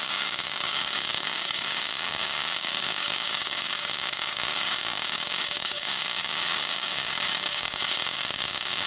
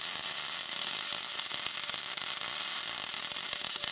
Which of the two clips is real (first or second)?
second